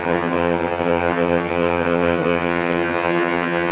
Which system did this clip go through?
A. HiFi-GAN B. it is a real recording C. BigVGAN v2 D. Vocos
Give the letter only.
A